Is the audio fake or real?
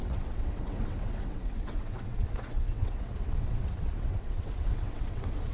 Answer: fake